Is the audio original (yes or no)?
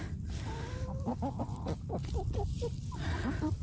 no